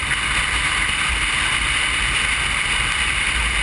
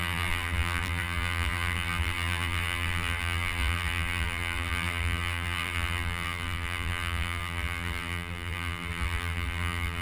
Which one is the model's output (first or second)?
second